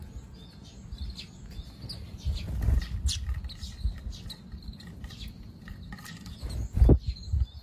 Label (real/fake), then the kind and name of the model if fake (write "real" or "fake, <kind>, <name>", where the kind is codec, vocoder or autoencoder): real